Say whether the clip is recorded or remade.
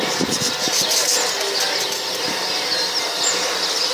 recorded